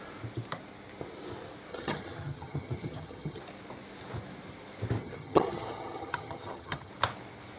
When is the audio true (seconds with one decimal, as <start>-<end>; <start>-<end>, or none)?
0.0-1.7; 3.4-5.0; 6.9-7.6